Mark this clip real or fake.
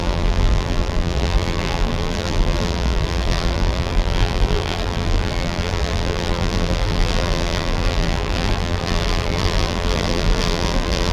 fake